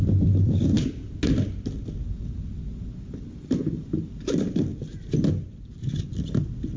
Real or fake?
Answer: real